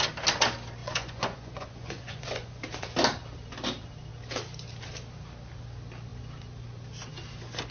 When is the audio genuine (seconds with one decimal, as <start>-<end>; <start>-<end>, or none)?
0.0-0.8; 2.6-7.7